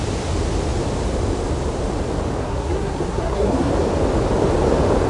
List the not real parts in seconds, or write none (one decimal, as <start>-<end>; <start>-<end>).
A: 2.4-3.7